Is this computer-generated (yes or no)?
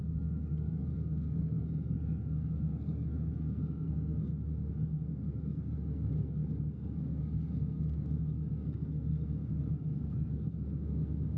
yes